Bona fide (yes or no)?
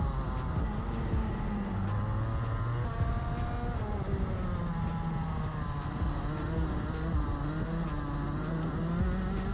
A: yes